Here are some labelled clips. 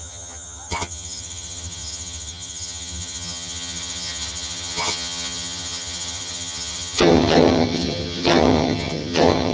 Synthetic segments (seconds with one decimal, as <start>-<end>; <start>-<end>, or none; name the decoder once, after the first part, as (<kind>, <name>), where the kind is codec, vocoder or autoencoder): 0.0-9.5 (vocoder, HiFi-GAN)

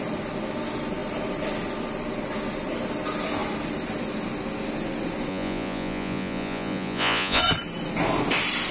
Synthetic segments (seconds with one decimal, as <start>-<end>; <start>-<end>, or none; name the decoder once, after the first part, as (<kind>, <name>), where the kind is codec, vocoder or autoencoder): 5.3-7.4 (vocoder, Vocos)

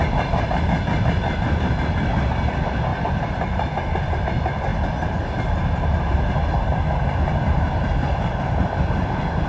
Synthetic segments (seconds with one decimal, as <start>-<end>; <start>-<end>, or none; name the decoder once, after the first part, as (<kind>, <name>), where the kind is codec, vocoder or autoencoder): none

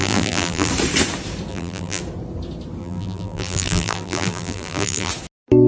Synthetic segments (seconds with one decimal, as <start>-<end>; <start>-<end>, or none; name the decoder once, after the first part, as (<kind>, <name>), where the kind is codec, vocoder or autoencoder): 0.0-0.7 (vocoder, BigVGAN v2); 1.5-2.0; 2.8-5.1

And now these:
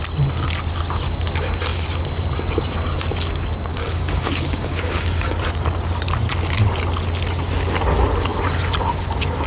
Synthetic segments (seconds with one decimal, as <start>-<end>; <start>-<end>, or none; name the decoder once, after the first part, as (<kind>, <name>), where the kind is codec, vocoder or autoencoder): 3.7-5.4 (codec, DAC)

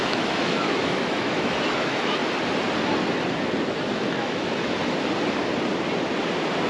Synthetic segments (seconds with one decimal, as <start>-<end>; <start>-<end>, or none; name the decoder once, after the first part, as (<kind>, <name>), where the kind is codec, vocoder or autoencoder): 0.0-2.2 (autoencoder, DAC-VAE); 3.9-4.8

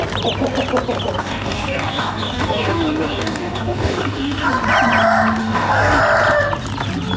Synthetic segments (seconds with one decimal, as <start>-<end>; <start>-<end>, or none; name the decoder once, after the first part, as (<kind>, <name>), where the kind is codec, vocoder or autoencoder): 1.2-4.5 (codec, DAC); 5.4-6.0

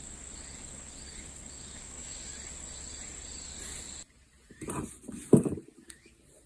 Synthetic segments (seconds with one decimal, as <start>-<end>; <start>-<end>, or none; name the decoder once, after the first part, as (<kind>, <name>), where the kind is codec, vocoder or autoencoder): 1.5-2.3 (autoencoder, DAC-VAE)